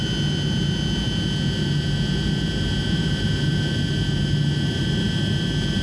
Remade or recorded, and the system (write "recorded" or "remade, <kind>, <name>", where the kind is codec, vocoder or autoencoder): recorded